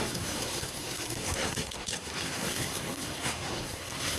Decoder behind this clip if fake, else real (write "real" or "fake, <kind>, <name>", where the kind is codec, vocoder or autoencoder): fake, codec, SNAC